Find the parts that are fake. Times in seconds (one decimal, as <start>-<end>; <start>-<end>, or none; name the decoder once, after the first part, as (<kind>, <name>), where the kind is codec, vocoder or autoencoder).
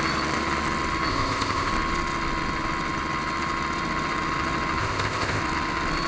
1.1-1.7 (codec, ZipCodec); 4.8-5.4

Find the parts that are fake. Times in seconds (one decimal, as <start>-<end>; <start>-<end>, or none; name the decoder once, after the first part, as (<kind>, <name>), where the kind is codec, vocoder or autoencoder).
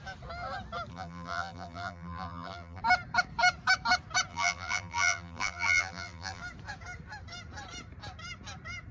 0.9-2.8 (vocoder, BigVGAN v2); 4.3-6.4